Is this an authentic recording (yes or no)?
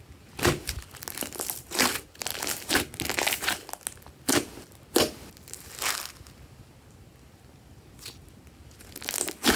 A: yes